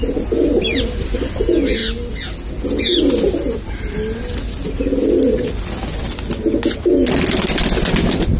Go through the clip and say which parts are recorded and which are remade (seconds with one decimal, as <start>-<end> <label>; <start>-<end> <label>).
0.0-8.4 recorded